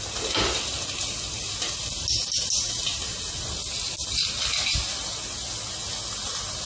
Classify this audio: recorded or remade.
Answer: recorded